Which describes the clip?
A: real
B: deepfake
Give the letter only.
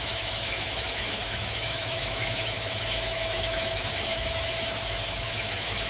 B